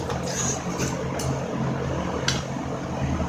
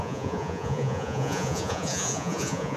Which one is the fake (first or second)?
second